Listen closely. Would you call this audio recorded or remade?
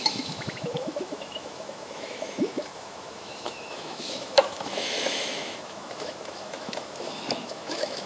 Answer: remade